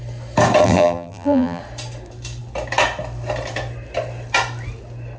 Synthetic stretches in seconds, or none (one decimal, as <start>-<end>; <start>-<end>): 0.6-1.6